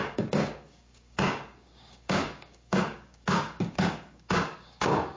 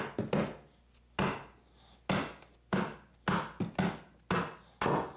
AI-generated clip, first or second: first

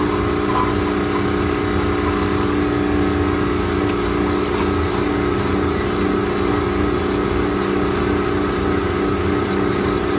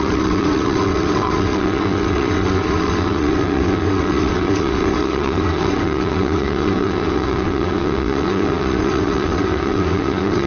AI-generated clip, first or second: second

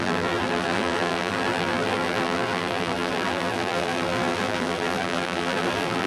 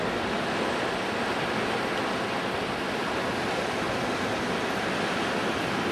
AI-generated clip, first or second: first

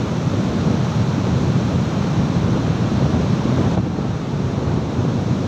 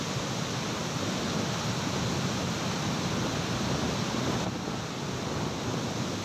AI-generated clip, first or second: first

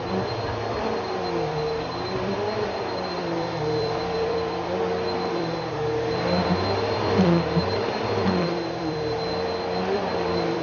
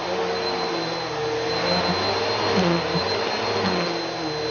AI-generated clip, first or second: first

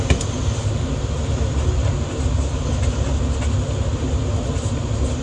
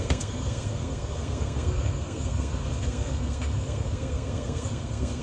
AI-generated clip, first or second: second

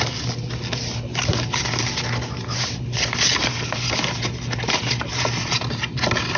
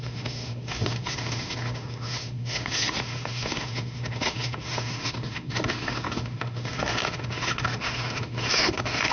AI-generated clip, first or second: second